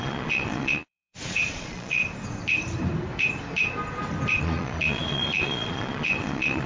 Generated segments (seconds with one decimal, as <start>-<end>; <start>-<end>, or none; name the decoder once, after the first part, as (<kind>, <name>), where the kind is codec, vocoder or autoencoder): 0.0-2.0 (vocoder, Vocos); 4.4-6.7